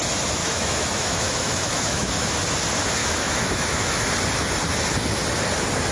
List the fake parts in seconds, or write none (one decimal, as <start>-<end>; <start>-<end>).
0.4-2.3; 3.0-4.1